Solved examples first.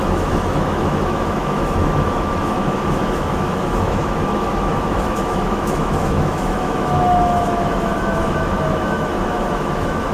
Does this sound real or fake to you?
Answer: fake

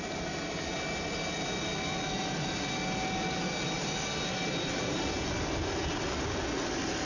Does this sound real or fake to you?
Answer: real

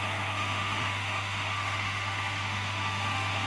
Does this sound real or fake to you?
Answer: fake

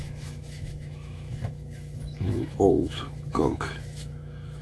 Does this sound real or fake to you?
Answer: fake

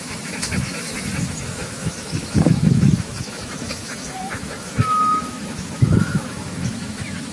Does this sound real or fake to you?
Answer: fake